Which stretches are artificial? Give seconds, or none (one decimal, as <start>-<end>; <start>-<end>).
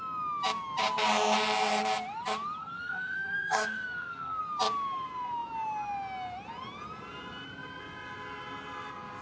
2.6-4.4